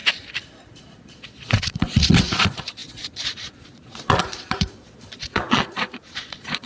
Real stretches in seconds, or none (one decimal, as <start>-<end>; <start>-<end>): 0.0-0.8